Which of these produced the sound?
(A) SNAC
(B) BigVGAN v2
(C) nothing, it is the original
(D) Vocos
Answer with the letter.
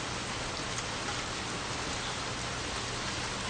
C